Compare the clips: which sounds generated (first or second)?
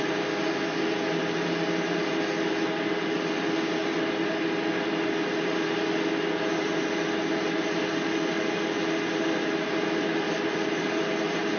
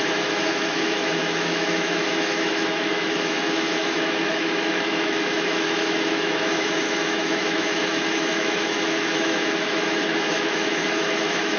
second